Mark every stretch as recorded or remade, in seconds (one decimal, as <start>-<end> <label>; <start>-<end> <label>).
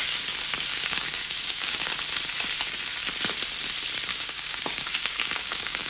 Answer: 0.0-0.7 recorded; 0.7-1.9 remade; 1.9-4.1 recorded; 4.1-5.9 remade